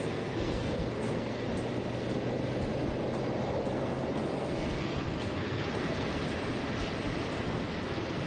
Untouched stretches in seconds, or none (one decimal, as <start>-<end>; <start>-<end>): 1.5-3.6; 6.2-7.4